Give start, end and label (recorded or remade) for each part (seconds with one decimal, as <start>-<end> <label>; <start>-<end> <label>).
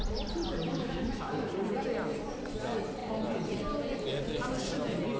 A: 0.0-0.7 recorded; 0.7-1.5 remade; 1.5-5.2 recorded